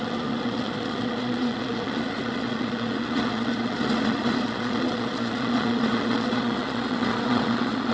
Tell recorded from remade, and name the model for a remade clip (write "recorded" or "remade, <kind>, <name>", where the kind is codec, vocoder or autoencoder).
remade, vocoder, Vocos